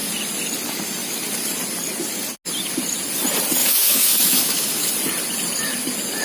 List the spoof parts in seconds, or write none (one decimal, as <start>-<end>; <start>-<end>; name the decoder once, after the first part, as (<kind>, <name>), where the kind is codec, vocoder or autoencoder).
3.6-4.9 (autoencoder, DAC-VAE)